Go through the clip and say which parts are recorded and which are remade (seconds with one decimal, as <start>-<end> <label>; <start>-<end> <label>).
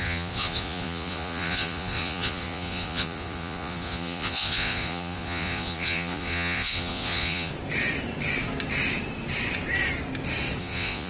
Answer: 0.0-7.5 remade; 7.5-10.6 recorded; 10.6-11.1 remade